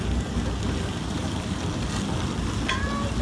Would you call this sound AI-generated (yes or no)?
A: no